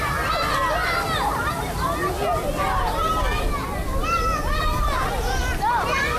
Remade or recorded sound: recorded